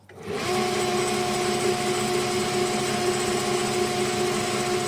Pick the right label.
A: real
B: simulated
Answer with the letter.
A